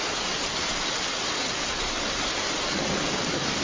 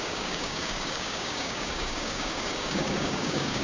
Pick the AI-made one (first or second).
second